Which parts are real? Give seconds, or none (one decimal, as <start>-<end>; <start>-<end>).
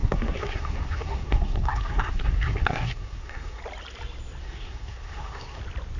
3.6-4.4; 5.6-6.0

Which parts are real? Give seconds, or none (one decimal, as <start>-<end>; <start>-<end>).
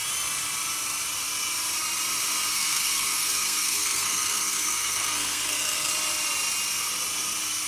0.0-2.5; 5.9-7.7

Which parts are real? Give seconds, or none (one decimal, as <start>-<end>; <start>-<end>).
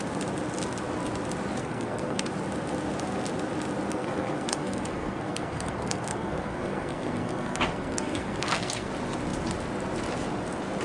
0.0-1.6; 2.3-3.9; 8.9-10.8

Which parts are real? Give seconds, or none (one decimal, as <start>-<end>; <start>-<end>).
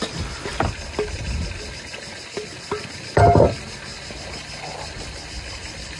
0.0-6.0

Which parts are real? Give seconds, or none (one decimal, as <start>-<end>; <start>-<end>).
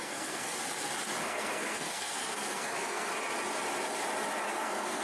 0.5-1.2; 3.1-4.5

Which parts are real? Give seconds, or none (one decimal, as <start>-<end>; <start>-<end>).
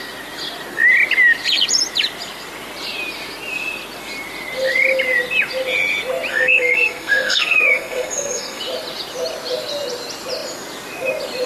0.0-6.3; 8.6-11.5